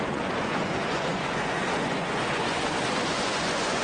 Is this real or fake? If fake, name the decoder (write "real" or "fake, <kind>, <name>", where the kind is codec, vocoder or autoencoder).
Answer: fake, vocoder, Vocos